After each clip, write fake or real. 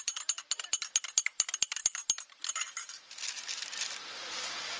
real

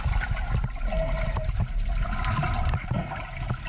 real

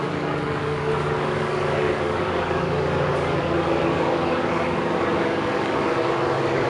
fake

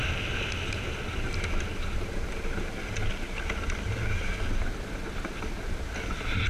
real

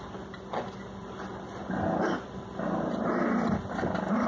real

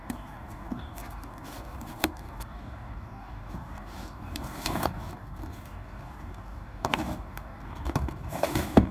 fake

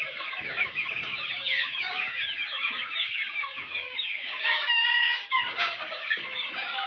fake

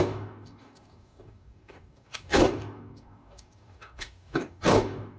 fake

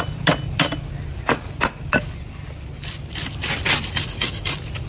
real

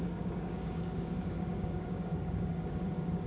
fake